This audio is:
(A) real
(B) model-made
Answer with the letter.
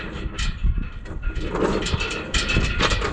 A